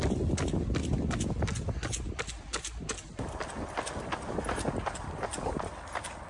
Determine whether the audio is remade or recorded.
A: recorded